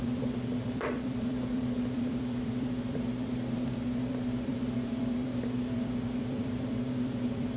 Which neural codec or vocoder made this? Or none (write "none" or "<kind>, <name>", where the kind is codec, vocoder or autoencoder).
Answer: vocoder, BigVGAN v2